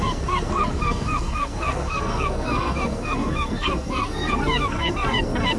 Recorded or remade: remade